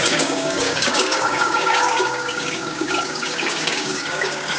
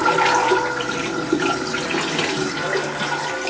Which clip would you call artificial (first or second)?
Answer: first